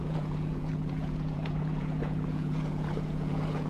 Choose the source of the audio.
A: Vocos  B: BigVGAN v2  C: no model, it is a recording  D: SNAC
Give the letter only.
A